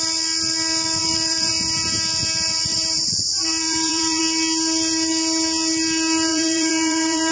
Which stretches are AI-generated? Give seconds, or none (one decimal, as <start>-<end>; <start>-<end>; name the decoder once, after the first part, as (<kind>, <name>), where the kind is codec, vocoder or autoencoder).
1.0-1.5 (vocoder, BigVGAN v2); 2.7-4.2; 6.3-7.3